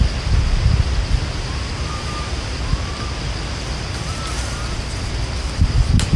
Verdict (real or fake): real